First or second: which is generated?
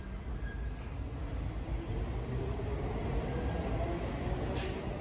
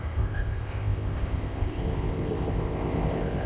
second